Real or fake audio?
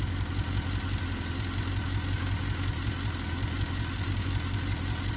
real